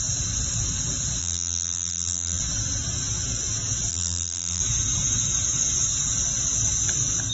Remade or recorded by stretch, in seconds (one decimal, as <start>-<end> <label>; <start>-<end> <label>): 0.0-1.2 recorded; 1.2-2.4 remade; 2.4-3.9 recorded; 3.9-4.6 remade; 4.6-7.3 recorded